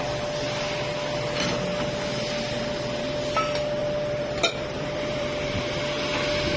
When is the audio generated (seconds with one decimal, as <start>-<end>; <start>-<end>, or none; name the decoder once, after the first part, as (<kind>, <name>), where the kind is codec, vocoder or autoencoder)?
3.8-5.6 (vocoder, BigVGAN v2)